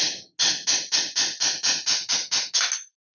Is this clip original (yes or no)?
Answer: yes